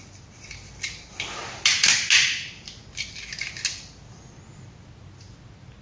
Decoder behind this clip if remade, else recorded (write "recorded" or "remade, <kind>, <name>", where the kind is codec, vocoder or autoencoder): recorded